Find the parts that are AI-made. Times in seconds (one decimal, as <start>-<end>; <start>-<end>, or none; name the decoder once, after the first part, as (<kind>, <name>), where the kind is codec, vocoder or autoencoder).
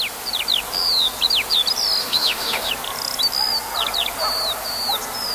2.0-2.7 (autoencoder, DAC-VAE)